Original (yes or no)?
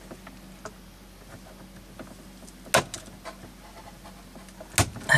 yes